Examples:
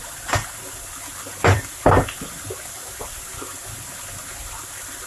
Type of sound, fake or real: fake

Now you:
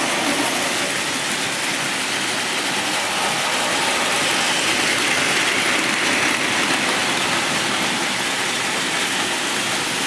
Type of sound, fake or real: real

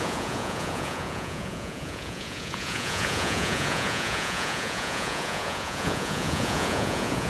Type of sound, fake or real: fake